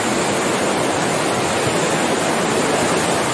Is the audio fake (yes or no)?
no